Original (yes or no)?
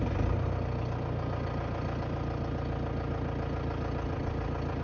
yes